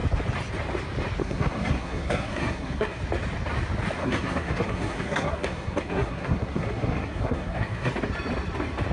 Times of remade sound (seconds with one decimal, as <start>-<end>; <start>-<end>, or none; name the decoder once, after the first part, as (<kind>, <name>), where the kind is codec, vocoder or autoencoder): 1.2-3.0 (codec, SNAC); 4.0-7.9